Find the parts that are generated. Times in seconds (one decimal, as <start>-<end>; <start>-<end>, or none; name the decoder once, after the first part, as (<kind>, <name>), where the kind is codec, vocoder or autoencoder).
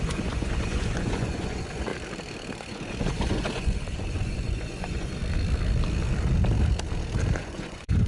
0.0-1.9 (vocoder, Vocos); 2.6-5.2; 7.4-8.1